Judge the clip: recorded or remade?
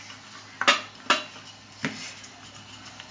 recorded